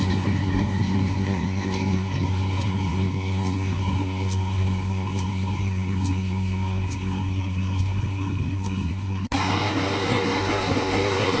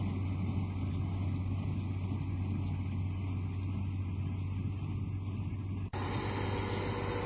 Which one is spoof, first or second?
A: first